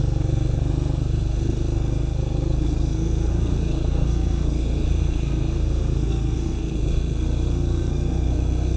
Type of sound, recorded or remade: remade